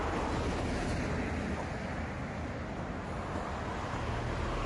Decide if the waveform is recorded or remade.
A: recorded